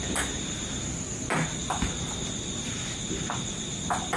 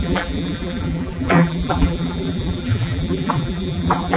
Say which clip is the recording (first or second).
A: first